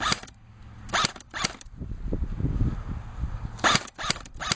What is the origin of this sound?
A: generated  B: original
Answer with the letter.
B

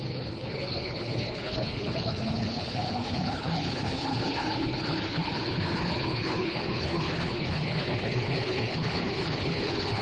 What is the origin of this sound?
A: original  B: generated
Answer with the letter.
B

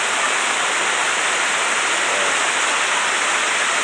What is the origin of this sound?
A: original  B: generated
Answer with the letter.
A